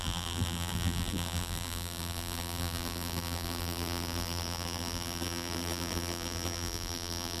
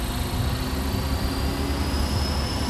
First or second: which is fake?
first